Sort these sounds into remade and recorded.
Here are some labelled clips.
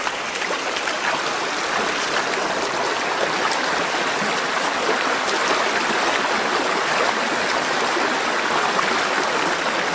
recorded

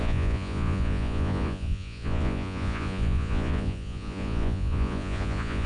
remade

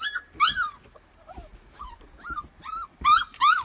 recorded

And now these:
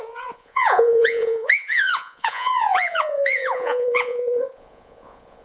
remade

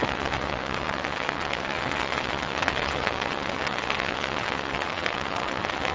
remade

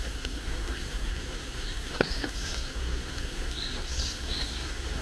remade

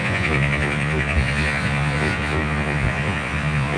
remade